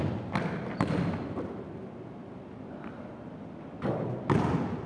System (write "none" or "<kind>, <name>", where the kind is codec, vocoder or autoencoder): none